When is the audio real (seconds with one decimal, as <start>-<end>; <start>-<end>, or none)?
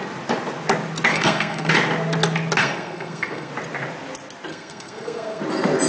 0.0-1.1; 1.7-2.6; 3.5-4.5; 5.4-5.9